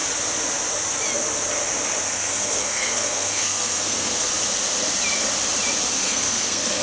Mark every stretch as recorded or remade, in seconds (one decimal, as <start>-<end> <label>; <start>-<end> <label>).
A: 0.0-2.1 recorded; 2.1-4.3 remade; 4.3-5.9 recorded; 5.9-6.8 remade